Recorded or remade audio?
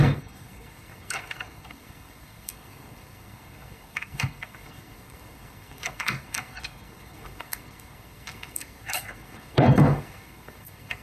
remade